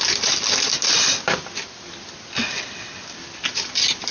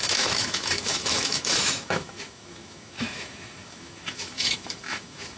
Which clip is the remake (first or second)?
second